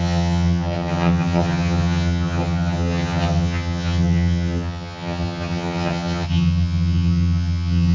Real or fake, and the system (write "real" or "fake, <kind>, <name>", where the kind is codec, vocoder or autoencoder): fake, vocoder, HiFi-GAN